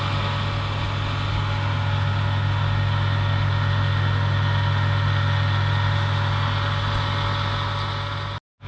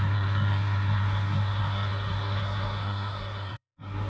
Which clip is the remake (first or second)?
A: second